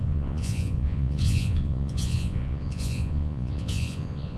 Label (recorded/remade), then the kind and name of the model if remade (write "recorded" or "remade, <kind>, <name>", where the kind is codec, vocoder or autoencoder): remade, vocoder, Vocos